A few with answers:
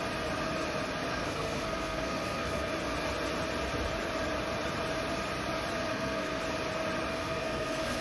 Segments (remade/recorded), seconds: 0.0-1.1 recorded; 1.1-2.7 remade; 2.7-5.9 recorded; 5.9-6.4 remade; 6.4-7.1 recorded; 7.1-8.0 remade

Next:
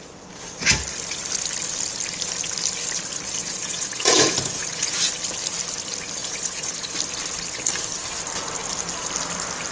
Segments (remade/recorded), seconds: 0.0-3.4 recorded; 3.4-5.1 remade; 5.1-6.2 recorded; 6.2-6.9 remade; 6.9-9.7 recorded

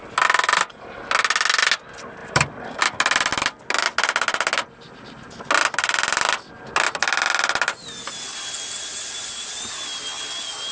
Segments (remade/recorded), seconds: 0.0-2.2 recorded; 2.2-2.8 remade; 2.8-8.9 recorded; 8.9-9.6 remade; 9.6-10.7 recorded